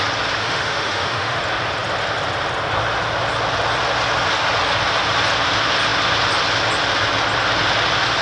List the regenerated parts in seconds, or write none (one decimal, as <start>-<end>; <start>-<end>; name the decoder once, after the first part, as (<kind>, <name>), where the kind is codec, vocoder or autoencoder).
0.4-1.4 (autoencoder, DAC-VAE)